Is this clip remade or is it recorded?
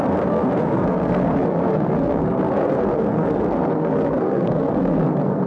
remade